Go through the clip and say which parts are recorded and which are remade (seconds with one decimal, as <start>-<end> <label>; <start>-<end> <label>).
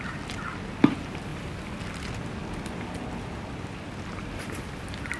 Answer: 0.0-5.2 recorded